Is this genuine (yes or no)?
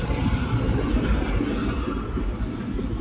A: yes